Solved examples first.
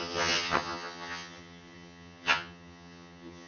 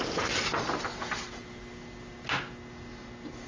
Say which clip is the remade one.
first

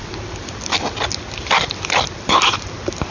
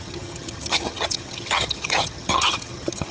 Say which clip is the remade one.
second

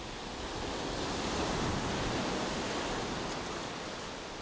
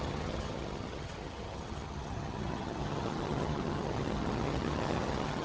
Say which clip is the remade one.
second